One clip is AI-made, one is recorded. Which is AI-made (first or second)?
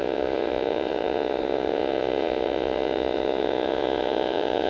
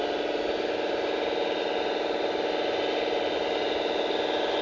first